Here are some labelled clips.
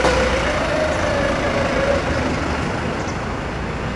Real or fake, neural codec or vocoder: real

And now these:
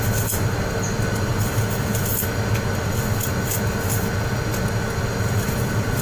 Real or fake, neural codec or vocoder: real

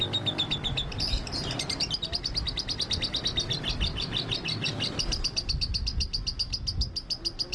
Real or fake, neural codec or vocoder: real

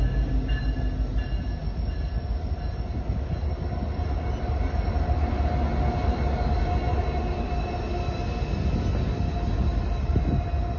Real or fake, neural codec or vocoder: real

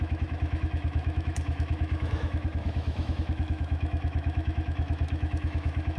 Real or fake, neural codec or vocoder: fake, autoencoder, DAC-VAE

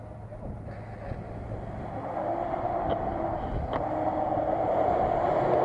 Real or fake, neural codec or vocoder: real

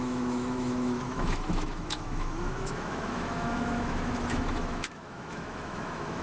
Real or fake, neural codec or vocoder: fake, autoencoder, DAC-VAE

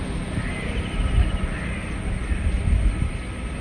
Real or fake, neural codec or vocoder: real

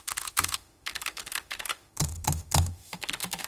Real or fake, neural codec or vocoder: fake, autoencoder, DAC-VAE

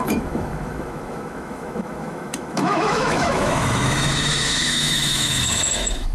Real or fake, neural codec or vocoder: fake, autoencoder, DAC-VAE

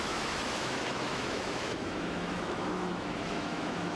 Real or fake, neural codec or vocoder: fake, autoencoder, DAC-VAE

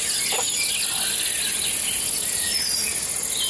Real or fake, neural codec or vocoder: real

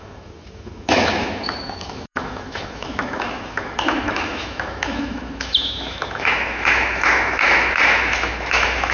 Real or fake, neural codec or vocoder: fake, autoencoder, DAC-VAE